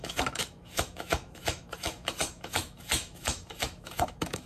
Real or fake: fake